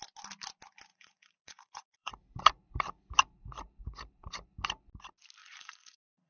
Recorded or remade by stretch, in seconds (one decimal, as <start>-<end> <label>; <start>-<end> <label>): 0.0-0.9 recorded; 0.9-2.1 remade; 2.1-5.4 recorded; 5.4-6.3 remade